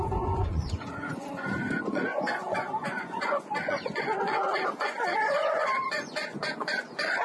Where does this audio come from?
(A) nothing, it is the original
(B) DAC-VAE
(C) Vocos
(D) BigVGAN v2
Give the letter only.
C